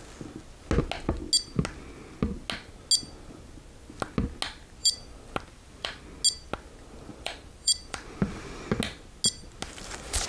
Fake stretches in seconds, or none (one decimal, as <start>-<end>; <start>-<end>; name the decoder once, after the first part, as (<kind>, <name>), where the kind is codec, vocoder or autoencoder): 4.8-6.0 (vocoder, BigVGAN v2); 7.1-8.6

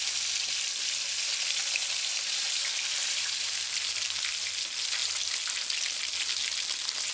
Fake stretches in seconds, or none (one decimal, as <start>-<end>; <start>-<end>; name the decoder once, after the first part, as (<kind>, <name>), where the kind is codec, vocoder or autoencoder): none

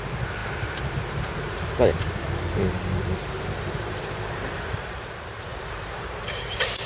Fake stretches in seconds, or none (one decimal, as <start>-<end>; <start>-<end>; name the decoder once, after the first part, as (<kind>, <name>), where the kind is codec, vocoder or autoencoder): 0.0-6.9 (vocoder, BigVGAN v2)

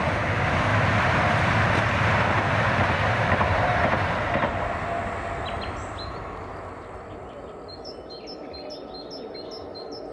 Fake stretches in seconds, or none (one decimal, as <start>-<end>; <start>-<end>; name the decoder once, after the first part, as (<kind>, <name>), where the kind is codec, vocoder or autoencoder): 0.7-4.6 (vocoder, BigVGAN v2)